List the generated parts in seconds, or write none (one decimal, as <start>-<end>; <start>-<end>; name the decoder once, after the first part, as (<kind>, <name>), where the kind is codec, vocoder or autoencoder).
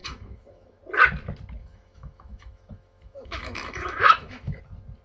0.0-0.8 (autoencoder, DAC-VAE); 1.6-4.6